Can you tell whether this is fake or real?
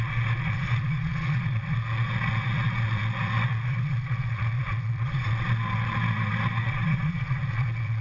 fake